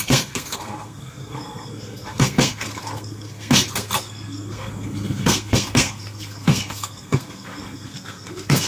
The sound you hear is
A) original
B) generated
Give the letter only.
B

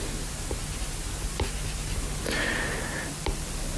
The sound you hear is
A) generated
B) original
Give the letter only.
B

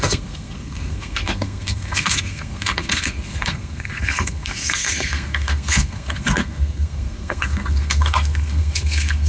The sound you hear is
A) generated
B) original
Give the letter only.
A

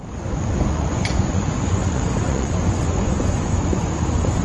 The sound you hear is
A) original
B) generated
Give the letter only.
B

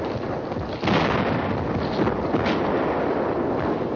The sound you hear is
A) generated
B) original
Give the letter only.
B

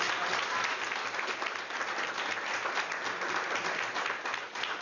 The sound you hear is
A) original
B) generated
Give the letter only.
A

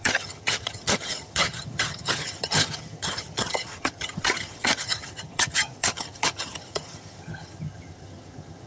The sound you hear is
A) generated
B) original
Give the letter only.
A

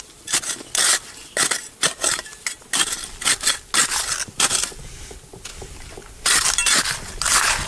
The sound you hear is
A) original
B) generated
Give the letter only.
A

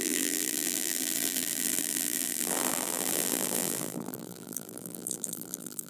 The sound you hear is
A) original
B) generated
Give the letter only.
B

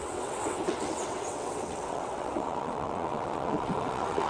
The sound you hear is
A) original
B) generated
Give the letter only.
B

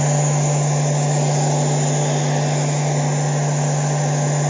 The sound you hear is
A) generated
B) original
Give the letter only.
B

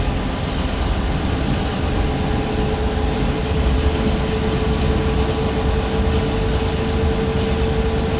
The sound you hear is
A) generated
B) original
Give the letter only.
B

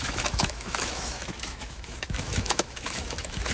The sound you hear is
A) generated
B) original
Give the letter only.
A